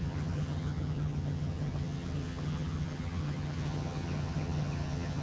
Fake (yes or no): yes